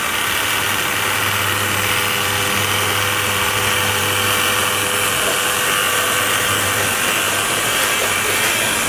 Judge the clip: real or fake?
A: real